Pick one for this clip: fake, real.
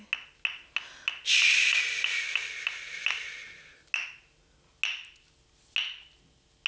real